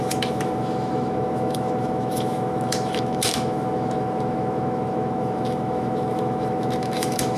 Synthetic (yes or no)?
yes